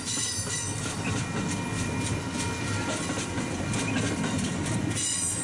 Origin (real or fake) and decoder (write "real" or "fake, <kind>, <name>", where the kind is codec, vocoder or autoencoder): real